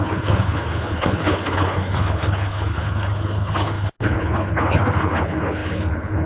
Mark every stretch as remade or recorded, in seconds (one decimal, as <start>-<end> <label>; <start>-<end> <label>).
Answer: 0.0-6.3 remade